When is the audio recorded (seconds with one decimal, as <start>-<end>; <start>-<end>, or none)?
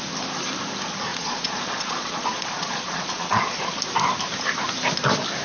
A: 0.0-1.1; 3.8-5.4